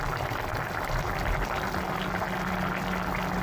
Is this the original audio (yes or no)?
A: yes